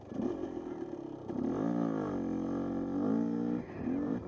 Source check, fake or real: real